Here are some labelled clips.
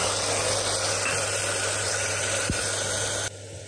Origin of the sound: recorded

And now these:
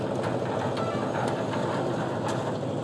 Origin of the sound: recorded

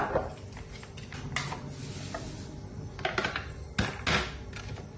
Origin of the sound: recorded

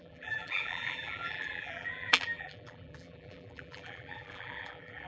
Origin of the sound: remade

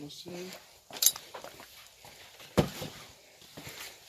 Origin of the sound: remade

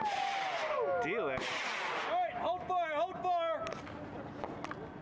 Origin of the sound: recorded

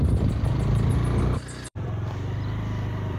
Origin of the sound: remade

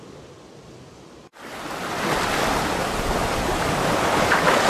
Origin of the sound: recorded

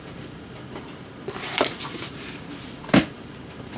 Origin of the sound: remade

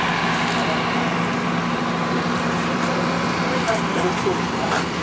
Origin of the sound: recorded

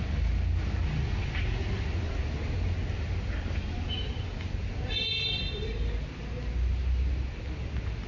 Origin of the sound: recorded